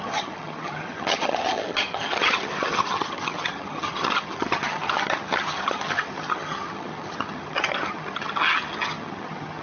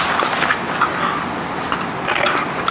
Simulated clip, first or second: first